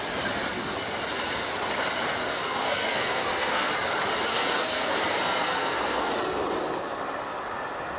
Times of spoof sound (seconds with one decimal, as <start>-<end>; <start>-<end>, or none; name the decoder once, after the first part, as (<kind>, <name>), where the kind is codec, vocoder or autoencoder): 2.3-3.7 (codec, SNAC); 4.3-6.1